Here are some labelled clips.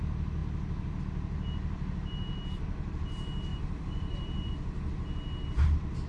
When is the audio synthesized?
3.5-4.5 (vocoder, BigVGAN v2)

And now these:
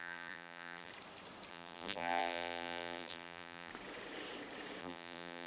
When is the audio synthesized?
0.0-0.9 (vocoder, BigVGAN v2); 1.5-3.7; 4.8-5.5

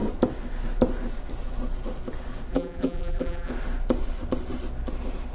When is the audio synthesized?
2.5-3.5 (vocoder, BigVGAN v2)

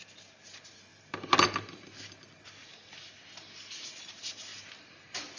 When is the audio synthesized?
none

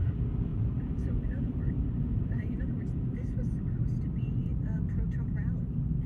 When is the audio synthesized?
0.5-3.8 (vocoder, BigVGAN v2)

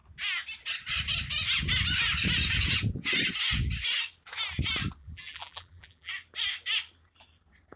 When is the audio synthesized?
5.0-6.1 (vocoder, BigVGAN v2)

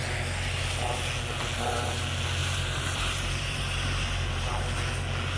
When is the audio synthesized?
2.4-4.6 (vocoder, BigVGAN v2)

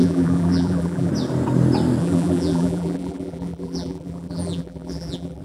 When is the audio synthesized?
0.0-1.1 (vocoder, BigVGAN v2); 2.0-5.4